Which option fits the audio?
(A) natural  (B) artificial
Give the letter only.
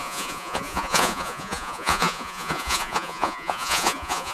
B